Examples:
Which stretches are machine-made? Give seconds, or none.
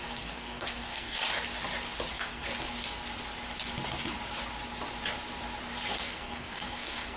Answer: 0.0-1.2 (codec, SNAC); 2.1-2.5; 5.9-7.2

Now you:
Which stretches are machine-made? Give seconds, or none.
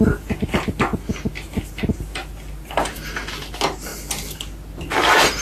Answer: none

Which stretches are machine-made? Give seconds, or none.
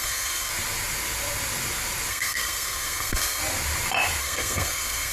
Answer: 0.0-0.5 (codec, SNAC); 2.1-3.4; 4.2-5.1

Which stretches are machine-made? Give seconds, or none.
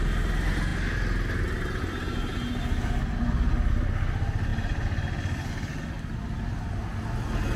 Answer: none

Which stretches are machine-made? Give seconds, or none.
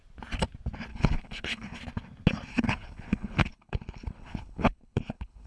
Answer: 0.9-1.8 (codec, HILCodec); 2.5-5.5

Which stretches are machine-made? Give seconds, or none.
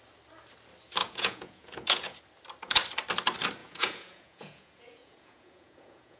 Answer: 1.0-2.2 (vocoder, Vocos); 3.6-6.2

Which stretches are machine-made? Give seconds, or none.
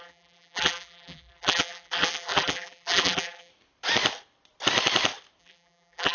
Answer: 0.0-3.5 (vocoder, BigVGAN v2); 5.4-6.1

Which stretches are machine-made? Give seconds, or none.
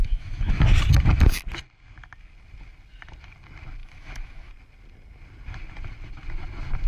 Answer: 0.0-0.5 (autoencoder, DAC-VAE); 3.8-4.5